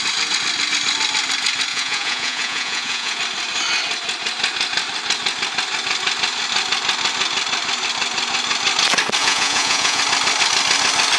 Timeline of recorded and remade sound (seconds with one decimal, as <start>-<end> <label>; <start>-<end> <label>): 0.0-1.7 recorded; 1.7-3.2 remade; 3.2-9.2 recorded; 9.2-10.0 remade; 10.0-11.2 recorded